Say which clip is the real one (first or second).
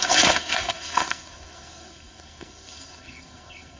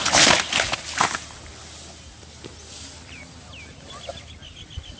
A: second